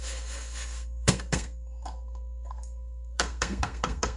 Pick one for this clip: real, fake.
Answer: fake